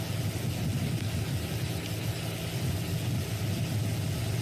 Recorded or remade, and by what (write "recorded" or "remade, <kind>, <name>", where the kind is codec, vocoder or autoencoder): recorded